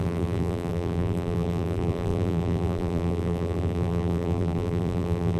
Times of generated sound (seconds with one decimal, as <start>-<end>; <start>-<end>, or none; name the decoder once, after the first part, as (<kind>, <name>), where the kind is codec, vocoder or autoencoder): 0.0-5.4 (vocoder, BigVGAN v2)